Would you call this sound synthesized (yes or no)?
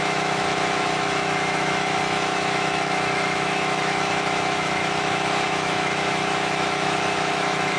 yes